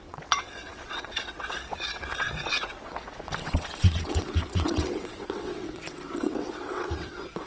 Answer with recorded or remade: remade